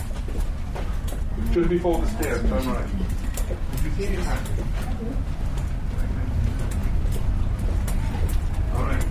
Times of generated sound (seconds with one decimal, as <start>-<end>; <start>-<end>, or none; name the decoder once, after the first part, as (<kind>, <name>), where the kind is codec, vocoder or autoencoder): 6.8-9.1 (vocoder, BigVGAN v2)